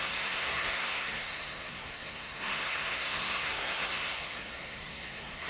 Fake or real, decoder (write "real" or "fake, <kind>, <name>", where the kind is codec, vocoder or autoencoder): fake, codec, SNAC